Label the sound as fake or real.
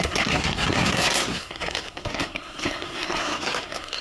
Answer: fake